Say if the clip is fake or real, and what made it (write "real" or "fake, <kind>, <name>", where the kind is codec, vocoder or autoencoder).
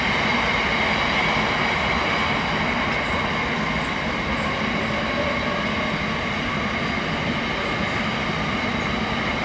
real